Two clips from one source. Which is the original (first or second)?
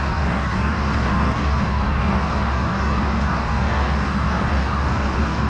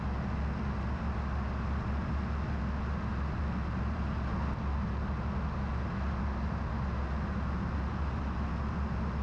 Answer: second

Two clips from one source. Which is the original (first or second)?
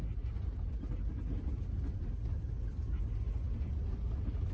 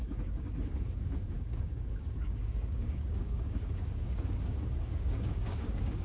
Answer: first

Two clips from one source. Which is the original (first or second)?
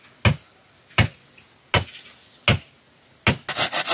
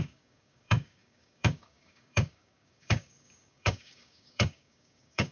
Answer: first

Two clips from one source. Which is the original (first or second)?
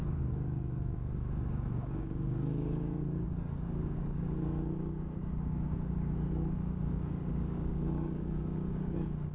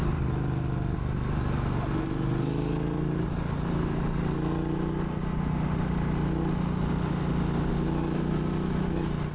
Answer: second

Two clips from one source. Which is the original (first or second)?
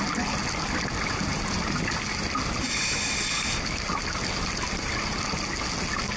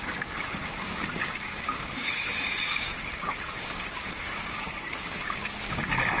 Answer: first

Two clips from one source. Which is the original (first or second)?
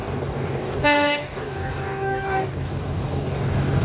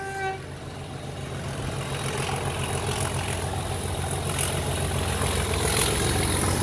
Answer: second